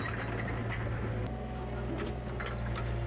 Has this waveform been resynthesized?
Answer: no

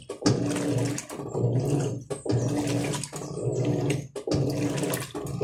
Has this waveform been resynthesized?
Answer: no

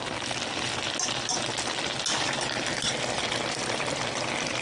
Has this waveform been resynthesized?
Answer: no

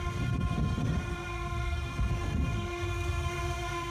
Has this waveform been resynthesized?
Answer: yes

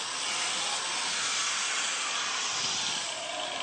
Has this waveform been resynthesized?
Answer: no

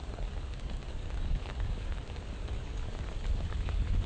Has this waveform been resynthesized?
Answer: yes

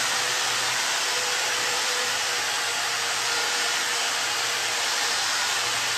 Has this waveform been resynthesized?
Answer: yes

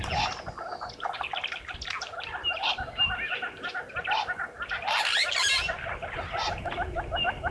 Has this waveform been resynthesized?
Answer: no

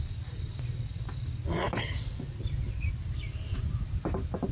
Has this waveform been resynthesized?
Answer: no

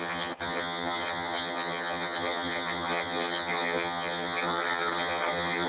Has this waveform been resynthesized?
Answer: yes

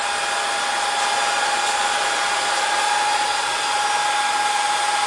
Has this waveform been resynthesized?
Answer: no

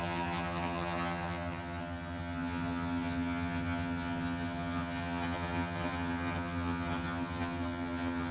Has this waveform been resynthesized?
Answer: yes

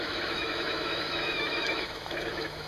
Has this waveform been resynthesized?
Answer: yes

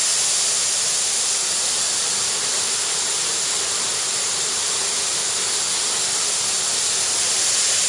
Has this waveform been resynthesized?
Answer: no